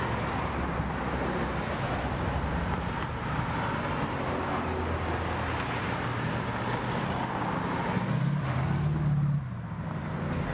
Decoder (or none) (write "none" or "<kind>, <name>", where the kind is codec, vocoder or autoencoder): none